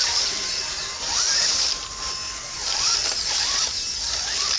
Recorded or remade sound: recorded